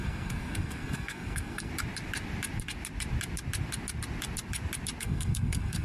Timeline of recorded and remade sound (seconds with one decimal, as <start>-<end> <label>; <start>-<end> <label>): 0.0-1.7 remade; 1.7-5.0 recorded; 5.0-5.8 remade